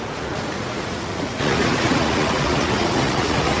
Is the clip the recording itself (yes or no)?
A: no